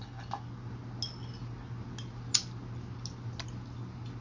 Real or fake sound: real